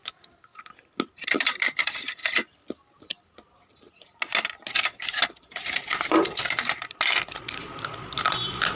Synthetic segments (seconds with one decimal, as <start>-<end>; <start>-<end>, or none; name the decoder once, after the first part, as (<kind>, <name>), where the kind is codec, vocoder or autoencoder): none